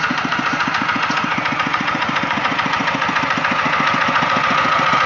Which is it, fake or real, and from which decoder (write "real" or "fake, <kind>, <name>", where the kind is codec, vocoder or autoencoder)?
fake, vocoder, Vocos